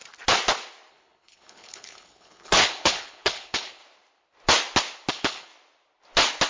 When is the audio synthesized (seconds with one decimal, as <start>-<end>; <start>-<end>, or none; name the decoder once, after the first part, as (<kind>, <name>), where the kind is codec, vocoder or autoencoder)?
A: 0.9-3.8 (codec, HILCodec); 5.1-5.5